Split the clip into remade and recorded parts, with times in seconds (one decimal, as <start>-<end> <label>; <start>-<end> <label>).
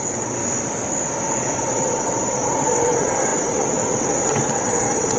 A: 0.0-0.4 remade; 0.4-1.3 recorded; 1.3-5.2 remade